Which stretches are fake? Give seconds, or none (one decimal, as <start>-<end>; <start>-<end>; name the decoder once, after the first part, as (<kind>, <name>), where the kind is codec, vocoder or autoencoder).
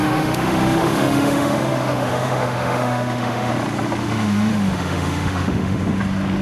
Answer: 0.0-3.5 (autoencoder, DAC-VAE); 4.0-6.0